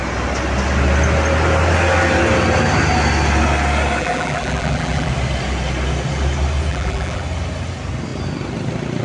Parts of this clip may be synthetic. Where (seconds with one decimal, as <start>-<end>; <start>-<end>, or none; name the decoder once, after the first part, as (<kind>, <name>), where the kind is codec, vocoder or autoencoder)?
4.0-5.1 (vocoder, BigVGAN v2); 6.7-7.2